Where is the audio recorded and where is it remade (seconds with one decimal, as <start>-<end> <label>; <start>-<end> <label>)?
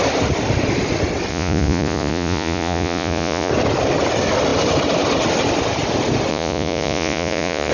0.0-1.3 recorded; 1.3-3.5 remade; 3.5-6.3 recorded; 6.3-7.7 remade